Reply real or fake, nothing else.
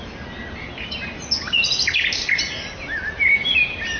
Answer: real